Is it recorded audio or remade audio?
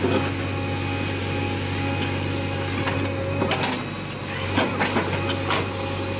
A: recorded